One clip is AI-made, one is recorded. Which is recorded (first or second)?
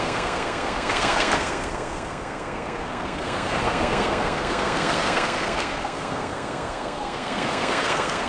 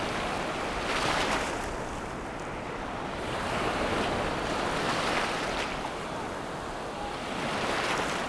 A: second